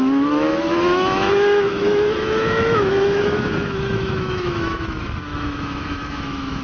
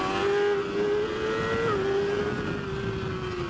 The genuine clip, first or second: second